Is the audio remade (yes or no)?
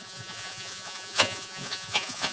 yes